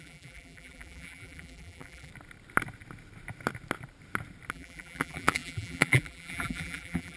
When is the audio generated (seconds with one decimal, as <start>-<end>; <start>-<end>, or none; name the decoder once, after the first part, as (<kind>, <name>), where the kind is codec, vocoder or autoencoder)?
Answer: 0.0-2.1 (vocoder, BigVGAN v2); 4.5-7.2